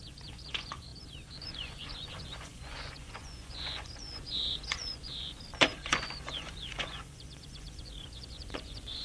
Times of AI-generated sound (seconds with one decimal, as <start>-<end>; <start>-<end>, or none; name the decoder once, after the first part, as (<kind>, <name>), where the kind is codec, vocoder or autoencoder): 0.0-9.0 (vocoder, Vocos)